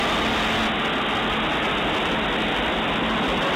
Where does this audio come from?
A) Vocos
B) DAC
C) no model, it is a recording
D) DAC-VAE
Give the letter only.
C